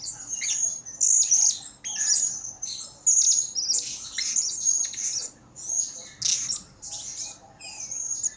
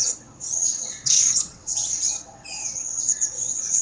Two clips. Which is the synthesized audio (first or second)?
second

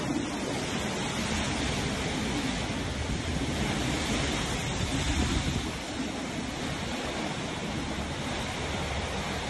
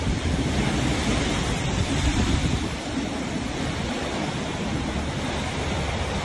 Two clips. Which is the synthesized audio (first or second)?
second